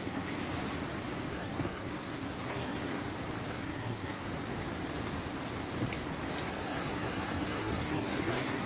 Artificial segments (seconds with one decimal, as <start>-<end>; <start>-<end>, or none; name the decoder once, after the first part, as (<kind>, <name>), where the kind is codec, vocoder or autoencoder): 0.0-0.4 (codec, SNAC); 1.3-3.0; 3.5-4.2; 6.5-8.7